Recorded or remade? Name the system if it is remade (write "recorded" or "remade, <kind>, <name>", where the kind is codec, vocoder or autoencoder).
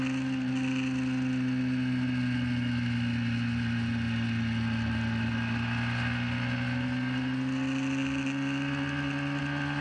recorded